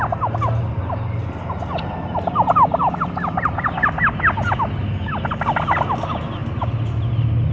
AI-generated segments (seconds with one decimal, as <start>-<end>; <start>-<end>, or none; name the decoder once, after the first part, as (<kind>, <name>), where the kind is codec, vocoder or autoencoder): 6.4-7.1 (vocoder, BigVGAN v2)